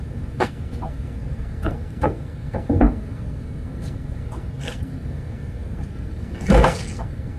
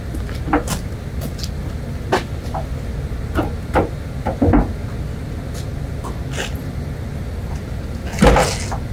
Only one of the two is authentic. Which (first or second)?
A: second